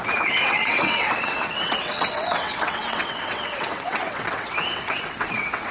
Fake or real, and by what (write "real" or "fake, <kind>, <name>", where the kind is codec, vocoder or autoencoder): fake, vocoder, WaveNeXt